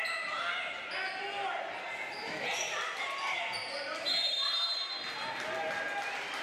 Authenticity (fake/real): real